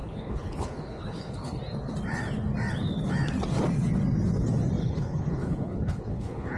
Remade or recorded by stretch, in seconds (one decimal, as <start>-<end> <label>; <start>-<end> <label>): 0.0-1.6 remade; 1.6-4.8 recorded; 4.8-6.6 remade